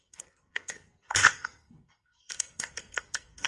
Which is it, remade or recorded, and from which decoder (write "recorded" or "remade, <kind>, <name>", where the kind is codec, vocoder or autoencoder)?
remade, codec, SNAC